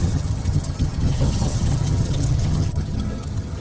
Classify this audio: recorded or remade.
remade